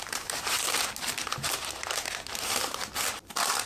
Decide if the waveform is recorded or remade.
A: recorded